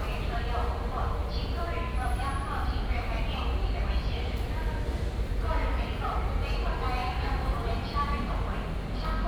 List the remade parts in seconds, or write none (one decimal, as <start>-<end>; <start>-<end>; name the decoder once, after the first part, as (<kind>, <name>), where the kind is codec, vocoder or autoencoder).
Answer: 1.2-4.7 (vocoder, BigVGAN v2); 7.0-8.2